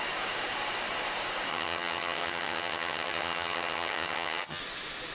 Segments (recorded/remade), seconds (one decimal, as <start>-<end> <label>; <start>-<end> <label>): 0.0-1.5 recorded; 1.5-4.6 remade; 4.6-5.1 recorded